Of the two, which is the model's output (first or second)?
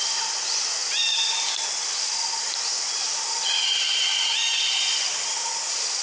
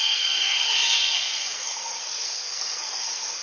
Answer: second